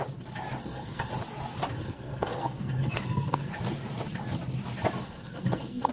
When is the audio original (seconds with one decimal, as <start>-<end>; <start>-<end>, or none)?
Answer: 0.0-0.6; 1.1-1.7; 3.5-5.0